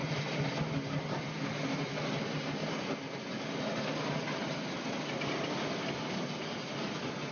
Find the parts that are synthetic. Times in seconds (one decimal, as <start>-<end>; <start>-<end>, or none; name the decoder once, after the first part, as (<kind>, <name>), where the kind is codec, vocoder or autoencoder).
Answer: none